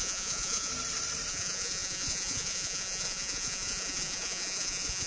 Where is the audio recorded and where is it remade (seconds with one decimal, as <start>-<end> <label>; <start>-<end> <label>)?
0.0-0.7 remade; 0.7-1.3 recorded; 1.3-5.1 remade